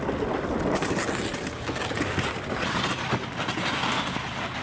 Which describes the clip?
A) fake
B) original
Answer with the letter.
B